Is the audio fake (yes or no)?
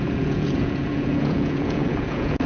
yes